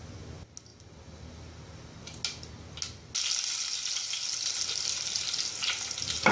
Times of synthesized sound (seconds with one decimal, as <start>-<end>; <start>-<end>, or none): none